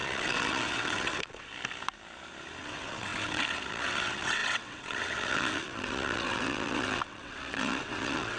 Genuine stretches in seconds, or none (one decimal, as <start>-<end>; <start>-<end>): 1.5-2.6